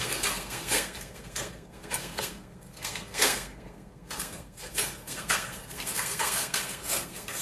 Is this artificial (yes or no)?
yes